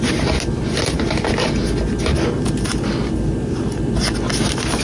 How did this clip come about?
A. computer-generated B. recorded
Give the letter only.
B